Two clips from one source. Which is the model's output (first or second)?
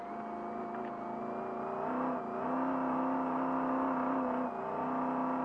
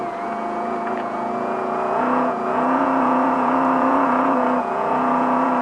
second